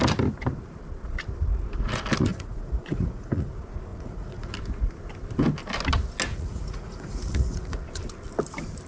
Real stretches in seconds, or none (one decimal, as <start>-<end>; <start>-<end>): 0.0-2.3; 3.5-3.9; 4.5-6.3; 7.8-8.9